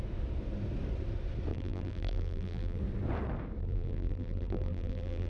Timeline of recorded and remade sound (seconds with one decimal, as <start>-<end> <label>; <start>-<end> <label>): 0.0-1.5 recorded; 1.5-2.8 remade; 2.8-3.6 recorded; 3.6-5.3 remade